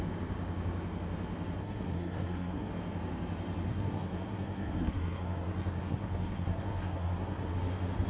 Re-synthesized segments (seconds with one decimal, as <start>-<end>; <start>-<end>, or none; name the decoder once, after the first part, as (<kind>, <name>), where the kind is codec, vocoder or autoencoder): 1.6-2.7 (codec, SNAC); 3.7-7.5

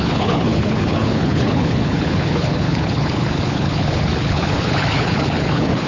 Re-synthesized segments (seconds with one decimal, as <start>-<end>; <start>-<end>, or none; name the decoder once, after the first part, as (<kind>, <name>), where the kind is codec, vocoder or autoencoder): 0.0-5.9 (codec, HILCodec)

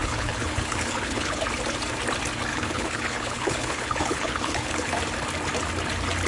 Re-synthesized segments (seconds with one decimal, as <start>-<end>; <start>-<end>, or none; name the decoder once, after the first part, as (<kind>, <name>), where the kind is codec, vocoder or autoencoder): 0.0-1.4 (codec, HILCodec); 2.5-4.9